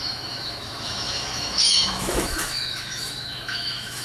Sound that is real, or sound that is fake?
fake